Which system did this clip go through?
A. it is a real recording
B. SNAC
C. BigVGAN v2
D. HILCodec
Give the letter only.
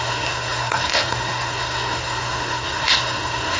B